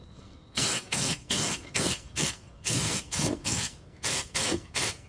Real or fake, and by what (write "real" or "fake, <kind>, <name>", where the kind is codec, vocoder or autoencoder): fake, codec, SNAC